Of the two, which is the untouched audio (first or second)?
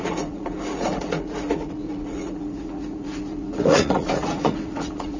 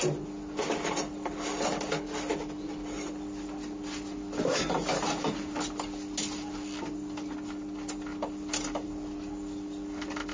second